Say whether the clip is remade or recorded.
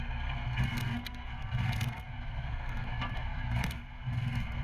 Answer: remade